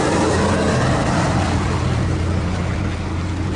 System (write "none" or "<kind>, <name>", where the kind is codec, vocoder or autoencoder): none